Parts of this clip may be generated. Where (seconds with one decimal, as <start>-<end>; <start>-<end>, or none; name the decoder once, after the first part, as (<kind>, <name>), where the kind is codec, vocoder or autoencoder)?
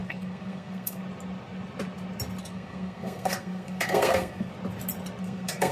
0.0-1.0 (codec, SNAC); 2.4-4.5; 5.2-5.7